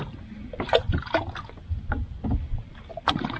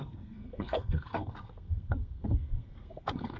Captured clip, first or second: first